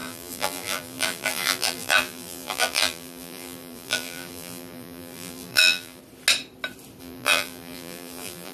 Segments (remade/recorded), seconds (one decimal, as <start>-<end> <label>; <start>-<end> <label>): 0.0-6.0 remade; 6.0-7.0 recorded; 7.0-8.5 remade